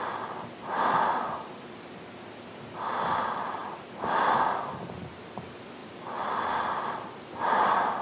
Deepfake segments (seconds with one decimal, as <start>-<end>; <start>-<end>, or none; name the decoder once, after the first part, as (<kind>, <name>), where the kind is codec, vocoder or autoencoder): none